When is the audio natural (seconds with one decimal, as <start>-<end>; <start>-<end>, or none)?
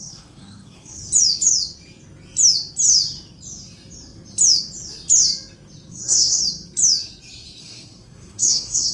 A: 1.0-5.9; 6.4-7.6